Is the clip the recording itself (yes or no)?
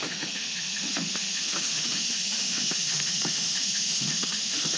no